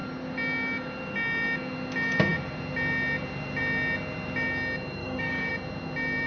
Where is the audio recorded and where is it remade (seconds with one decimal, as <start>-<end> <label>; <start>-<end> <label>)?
0.0-5.0 recorded; 5.0-5.5 remade; 5.5-6.3 recorded